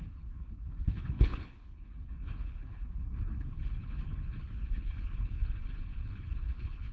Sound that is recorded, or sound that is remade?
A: remade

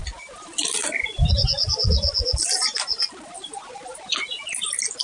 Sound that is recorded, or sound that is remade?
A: remade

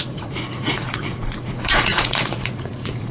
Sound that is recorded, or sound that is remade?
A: remade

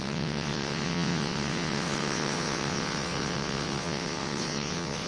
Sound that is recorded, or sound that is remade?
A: remade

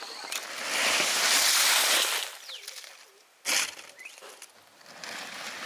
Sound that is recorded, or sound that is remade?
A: recorded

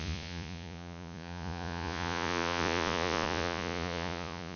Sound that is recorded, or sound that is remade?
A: remade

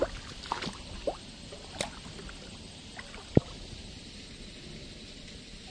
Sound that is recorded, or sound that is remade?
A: recorded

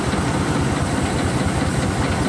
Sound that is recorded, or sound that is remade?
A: recorded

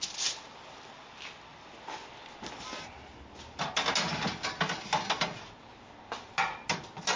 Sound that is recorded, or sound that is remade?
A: recorded